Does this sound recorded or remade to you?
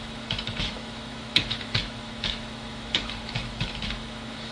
remade